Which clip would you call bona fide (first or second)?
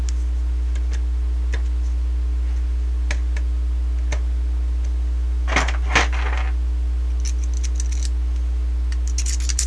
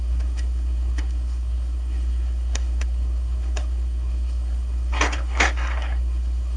first